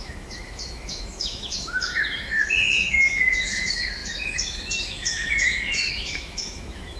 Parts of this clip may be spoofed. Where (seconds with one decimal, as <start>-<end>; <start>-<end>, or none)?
0.0-7.0